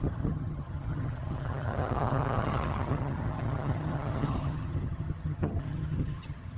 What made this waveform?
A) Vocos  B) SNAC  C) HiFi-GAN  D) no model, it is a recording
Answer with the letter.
C